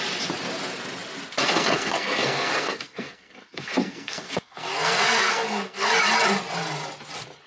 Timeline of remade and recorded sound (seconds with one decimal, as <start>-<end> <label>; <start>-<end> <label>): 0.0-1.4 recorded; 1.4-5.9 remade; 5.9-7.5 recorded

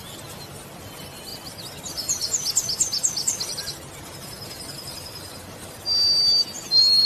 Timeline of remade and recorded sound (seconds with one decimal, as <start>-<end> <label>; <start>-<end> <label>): 0.0-7.1 recorded

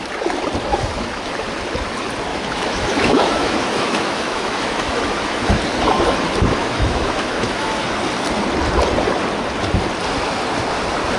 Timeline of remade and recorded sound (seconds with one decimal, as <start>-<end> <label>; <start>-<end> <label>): 0.0-0.7 recorded; 0.7-1.3 remade; 1.3-2.3 recorded; 2.3-5.6 remade; 5.6-6.6 recorded; 6.6-7.8 remade; 7.8-11.2 recorded

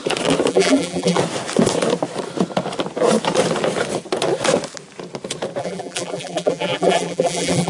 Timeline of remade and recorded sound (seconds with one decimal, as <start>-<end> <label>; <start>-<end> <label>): 0.0-0.5 recorded; 0.5-1.2 remade; 1.2-5.6 recorded; 5.6-7.7 remade

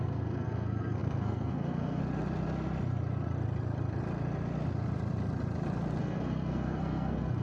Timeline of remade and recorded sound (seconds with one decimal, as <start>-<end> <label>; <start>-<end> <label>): 0.0-2.0 remade; 2.0-6.0 recorded; 6.0-7.4 remade